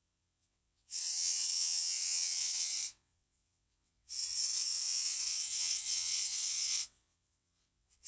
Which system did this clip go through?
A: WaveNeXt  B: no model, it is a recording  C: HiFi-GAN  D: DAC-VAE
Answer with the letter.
A